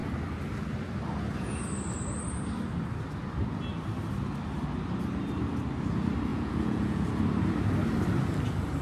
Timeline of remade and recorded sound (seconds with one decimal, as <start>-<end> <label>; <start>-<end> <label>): 0.0-6.3 recorded; 6.3-7.1 remade; 7.1-8.8 recorded